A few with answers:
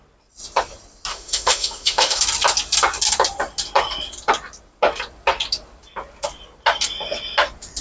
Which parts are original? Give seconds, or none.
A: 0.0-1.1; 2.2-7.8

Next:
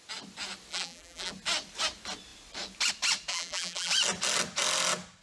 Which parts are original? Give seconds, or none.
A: 0.0-0.7; 1.3-3.3; 3.9-5.2

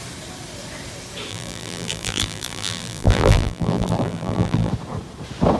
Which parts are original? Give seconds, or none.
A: 0.0-1.3; 4.7-5.6

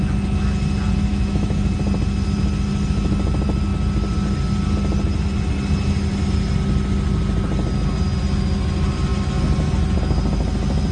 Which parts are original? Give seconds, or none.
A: 0.0-1.1; 1.7-10.9